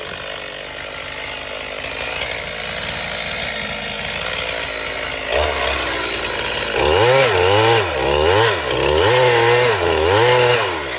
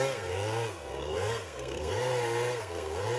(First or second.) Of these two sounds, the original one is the first